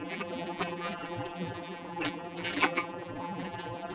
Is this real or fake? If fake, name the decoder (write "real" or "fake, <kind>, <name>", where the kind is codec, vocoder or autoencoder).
fake, vocoder, BigVGAN v2